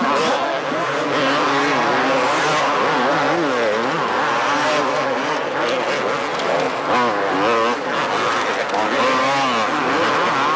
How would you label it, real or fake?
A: real